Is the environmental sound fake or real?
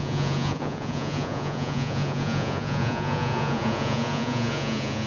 fake